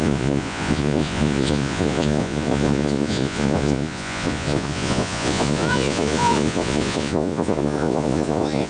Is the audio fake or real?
fake